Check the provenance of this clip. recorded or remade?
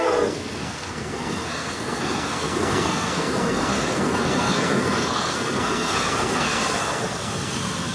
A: remade